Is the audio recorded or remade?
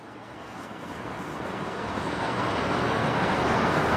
remade